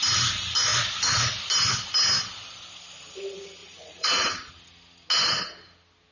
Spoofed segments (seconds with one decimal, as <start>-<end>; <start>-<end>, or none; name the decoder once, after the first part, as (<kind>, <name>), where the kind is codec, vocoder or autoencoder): 3.6-4.5 (vocoder, Vocos)